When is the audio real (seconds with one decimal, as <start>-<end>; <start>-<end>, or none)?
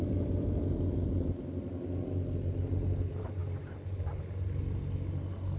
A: 0.0-5.6